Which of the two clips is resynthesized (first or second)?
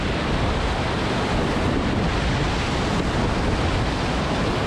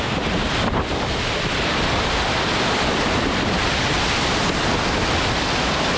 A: second